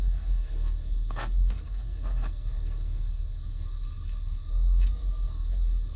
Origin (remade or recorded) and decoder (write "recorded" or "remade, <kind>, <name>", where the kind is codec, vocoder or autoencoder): remade, codec, SNAC